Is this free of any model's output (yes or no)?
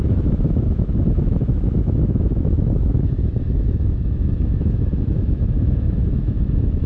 no